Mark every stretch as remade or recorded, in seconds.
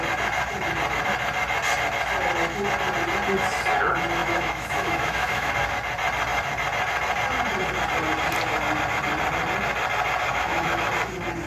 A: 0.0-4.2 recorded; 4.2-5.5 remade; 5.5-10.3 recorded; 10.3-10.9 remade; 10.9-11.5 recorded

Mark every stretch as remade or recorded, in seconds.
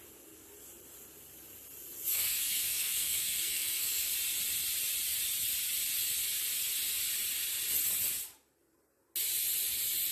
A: 0.0-2.1 recorded; 2.1-4.1 remade; 4.1-10.1 recorded